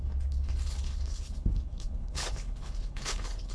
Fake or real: fake